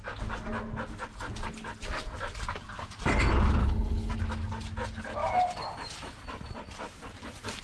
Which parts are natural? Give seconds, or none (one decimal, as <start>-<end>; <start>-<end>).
0.0-3.6; 4.1-7.6

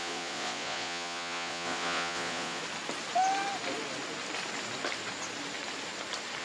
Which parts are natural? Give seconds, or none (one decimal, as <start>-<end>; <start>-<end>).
2.6-6.4

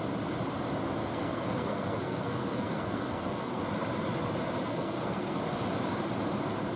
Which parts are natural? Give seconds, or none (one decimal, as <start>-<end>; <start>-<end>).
0.0-1.0; 3.6-4.7; 5.4-6.8

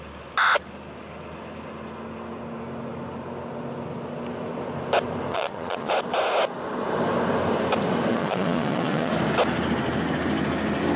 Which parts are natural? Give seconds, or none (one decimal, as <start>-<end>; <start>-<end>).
0.0-5.3; 5.9-8.1; 9.1-11.0

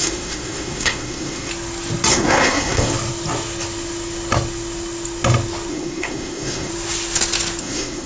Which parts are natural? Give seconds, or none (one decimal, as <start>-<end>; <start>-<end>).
1.5-2.1; 2.9-5.7; 6.7-7.6

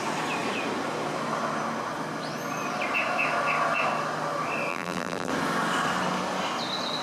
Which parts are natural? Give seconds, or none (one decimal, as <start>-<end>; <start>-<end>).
0.0-4.7; 5.3-7.0